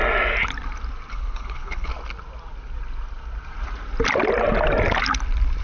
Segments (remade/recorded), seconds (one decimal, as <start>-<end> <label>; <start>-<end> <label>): 0.0-1.1 recorded; 1.1-1.9 remade; 1.9-5.6 recorded